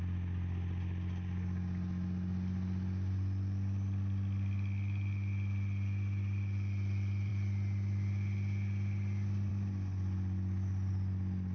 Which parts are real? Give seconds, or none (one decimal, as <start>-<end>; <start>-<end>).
0.0-11.5